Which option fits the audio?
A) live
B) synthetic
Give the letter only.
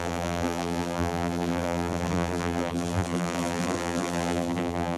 B